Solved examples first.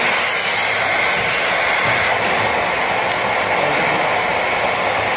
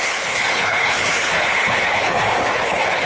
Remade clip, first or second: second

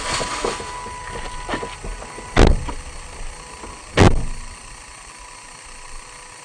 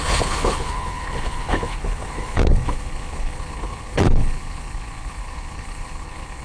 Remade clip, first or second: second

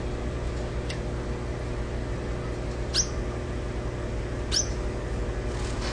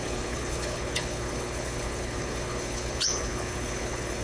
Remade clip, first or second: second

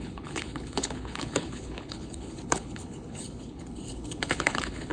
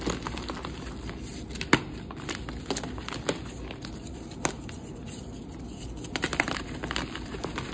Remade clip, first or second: first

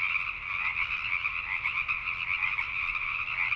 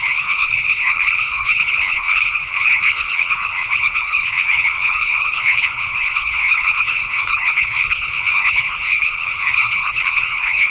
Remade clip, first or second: second